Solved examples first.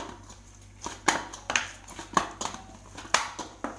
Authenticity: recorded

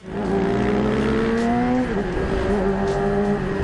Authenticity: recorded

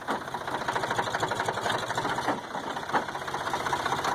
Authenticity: recorded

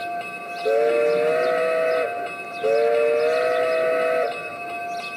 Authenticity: recorded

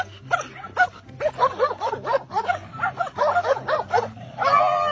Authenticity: recorded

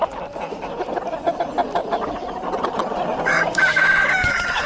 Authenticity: remade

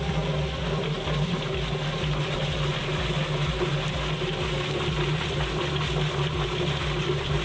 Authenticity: recorded